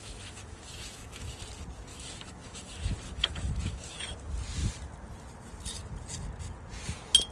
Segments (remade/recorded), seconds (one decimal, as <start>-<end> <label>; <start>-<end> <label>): 0.0-1.4 remade; 1.4-1.9 recorded; 1.9-4.1 remade; 4.1-7.3 recorded